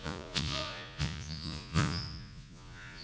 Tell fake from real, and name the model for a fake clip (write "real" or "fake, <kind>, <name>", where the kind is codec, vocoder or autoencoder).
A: fake, vocoder, Vocos